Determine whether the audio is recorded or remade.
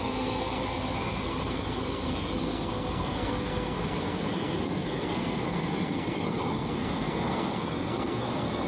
remade